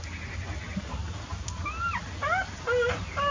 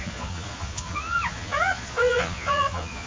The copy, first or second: second